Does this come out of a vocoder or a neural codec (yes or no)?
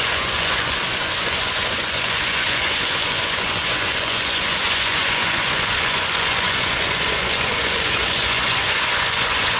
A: yes